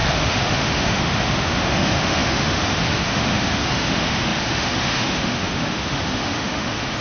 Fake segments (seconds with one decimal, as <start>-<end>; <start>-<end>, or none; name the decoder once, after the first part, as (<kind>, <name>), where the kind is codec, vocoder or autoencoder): 0.0-7.0 (autoencoder, DAC-VAE)

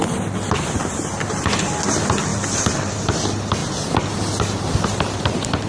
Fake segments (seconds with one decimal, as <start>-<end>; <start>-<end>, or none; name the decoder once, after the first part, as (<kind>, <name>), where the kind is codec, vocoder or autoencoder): none

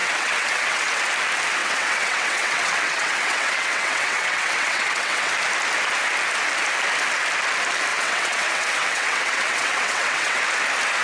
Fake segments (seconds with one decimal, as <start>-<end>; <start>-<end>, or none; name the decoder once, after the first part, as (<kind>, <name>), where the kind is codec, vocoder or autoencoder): 0.0-1.0 (vocoder, WaveNeXt); 1.6-5.3; 7.9-10.4

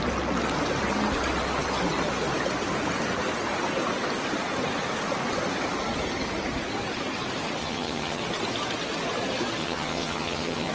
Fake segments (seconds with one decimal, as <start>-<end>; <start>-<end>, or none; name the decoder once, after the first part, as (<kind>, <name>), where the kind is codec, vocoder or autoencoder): 7.6-8.2 (vocoder, HiFi-GAN); 9.6-10.7